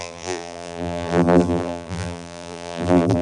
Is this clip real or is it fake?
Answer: fake